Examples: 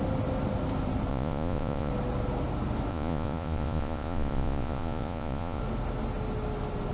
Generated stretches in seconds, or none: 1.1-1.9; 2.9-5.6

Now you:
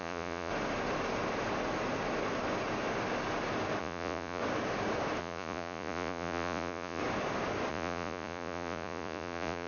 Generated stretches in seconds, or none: 0.0-0.5; 3.8-4.4; 5.2-7.0; 7.7-9.7

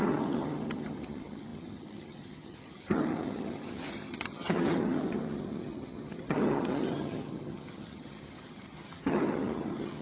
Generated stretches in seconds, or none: 0.0-10.0

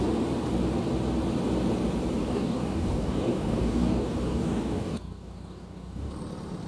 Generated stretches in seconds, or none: 2.2-6.1

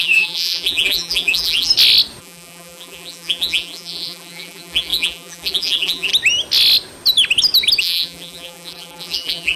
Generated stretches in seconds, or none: 0.0-1.7; 2.2-6.1; 7.8-9.6

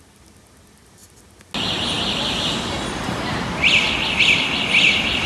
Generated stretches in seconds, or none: none

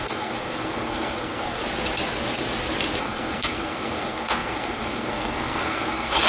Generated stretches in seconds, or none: 0.0-1.6; 3.0-6.3

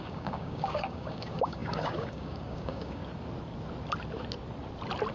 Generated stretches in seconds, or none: 0.0-3.0